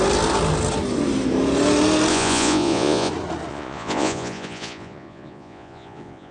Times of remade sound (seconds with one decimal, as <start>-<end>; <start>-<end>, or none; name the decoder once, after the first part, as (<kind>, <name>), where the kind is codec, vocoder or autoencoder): 2.1-3.1 (vocoder, Vocos); 3.5-6.3